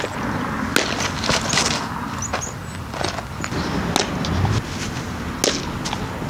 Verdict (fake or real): real